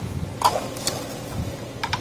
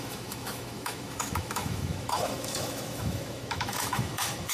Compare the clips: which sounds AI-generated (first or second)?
second